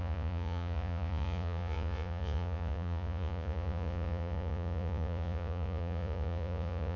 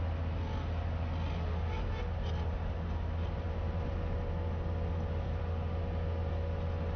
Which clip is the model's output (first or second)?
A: first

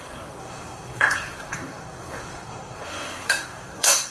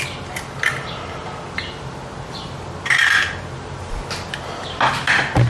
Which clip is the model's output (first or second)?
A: first